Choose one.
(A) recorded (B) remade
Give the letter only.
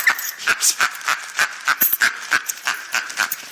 B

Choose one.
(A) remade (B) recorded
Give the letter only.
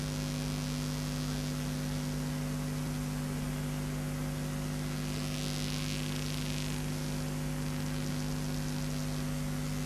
B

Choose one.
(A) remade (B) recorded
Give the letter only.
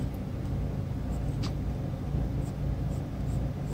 B